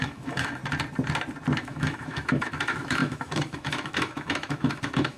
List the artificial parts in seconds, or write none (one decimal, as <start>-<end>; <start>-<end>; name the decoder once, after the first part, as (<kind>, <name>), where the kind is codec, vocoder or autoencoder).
0.0-0.6 (autoencoder, DAC-VAE); 1.6-5.2